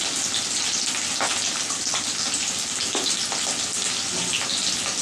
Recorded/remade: recorded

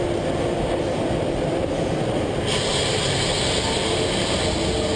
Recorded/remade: recorded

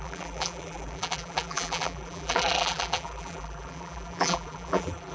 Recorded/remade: remade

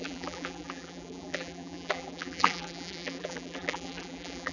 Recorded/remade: remade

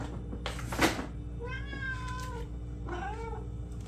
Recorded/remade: recorded